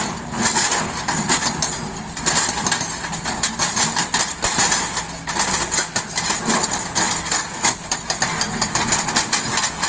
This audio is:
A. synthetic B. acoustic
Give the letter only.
B